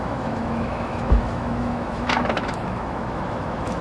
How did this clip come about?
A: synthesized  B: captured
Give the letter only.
A